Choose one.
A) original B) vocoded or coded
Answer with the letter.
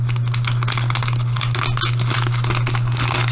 A